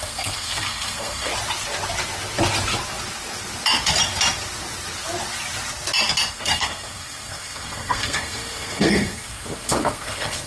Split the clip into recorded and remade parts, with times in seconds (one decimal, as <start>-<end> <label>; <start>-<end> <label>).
0.0-1.3 remade; 1.3-6.3 recorded; 6.3-10.5 remade